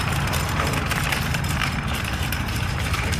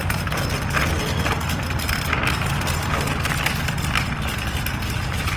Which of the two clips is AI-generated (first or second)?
first